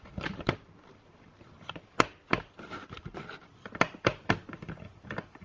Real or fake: fake